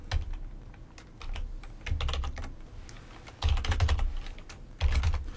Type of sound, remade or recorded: recorded